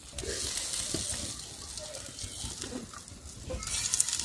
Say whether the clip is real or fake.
real